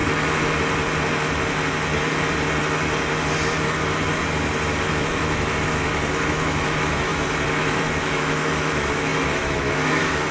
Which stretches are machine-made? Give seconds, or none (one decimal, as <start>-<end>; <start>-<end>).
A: 4.9-7.1; 8.0-10.3